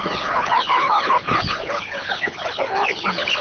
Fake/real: fake